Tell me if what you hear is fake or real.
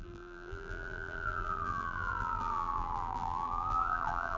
fake